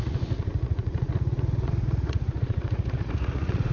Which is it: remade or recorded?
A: remade